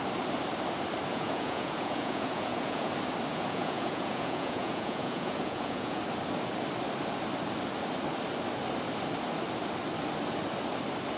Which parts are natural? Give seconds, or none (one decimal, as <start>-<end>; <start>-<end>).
0.0-1.1; 2.9-3.3; 6.0-11.2